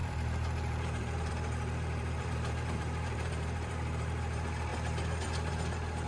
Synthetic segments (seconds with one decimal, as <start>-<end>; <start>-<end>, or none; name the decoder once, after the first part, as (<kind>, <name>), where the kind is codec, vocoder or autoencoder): 0.0-4.7 (vocoder, BigVGAN v2)